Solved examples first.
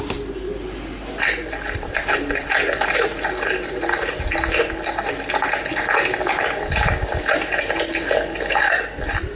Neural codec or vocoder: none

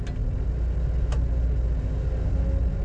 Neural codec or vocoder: none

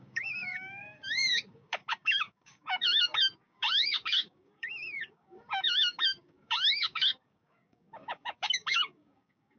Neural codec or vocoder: codec, DAC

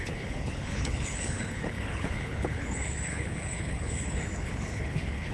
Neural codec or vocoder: codec, HILCodec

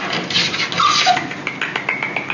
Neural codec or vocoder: none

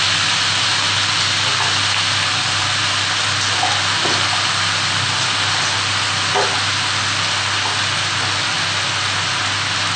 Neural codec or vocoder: none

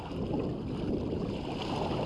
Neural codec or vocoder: none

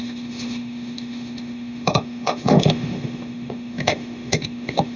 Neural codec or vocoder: autoencoder, DAC-VAE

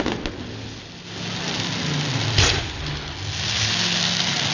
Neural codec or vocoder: none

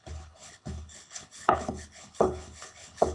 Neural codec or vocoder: codec, HILCodec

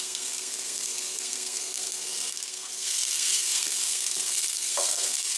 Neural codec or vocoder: codec, SNAC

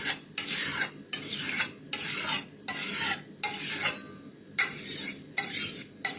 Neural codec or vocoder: none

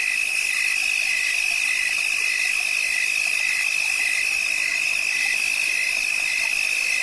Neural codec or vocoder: none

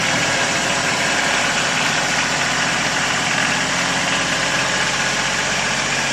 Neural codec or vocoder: vocoder, BigVGAN v2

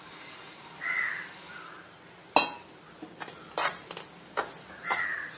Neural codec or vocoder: none